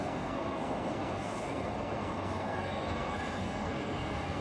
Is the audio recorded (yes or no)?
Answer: no